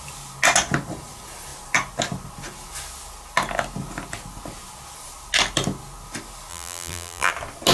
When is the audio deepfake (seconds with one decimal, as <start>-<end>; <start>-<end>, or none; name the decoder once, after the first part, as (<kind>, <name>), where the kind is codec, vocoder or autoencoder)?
6.5-7.3 (vocoder, BigVGAN v2)